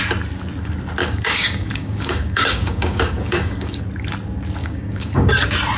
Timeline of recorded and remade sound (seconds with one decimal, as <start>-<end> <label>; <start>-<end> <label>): 0.0-1.0 recorded; 1.0-3.8 remade; 3.8-4.6 recorded; 4.6-5.3 remade; 5.3-5.8 recorded